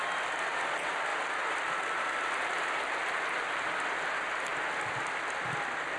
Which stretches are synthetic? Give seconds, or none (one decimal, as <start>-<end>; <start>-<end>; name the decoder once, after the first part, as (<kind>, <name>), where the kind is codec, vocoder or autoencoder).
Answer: none